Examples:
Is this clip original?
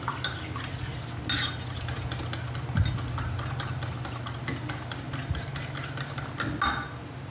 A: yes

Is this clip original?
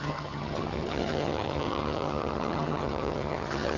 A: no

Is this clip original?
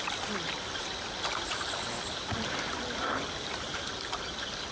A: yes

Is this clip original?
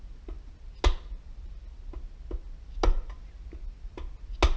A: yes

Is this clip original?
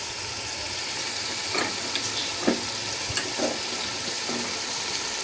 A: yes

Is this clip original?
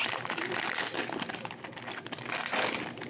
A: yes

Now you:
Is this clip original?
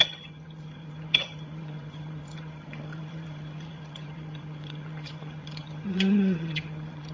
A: no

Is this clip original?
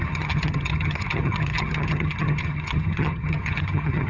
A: no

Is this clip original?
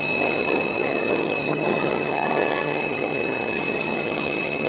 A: no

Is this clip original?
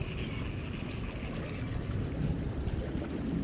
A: yes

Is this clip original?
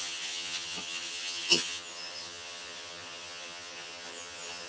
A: no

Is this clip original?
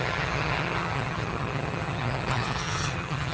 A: no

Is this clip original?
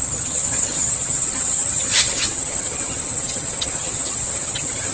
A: no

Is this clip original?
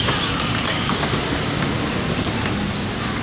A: yes